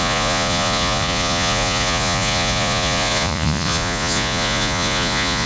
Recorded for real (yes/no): no